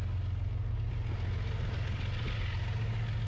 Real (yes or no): yes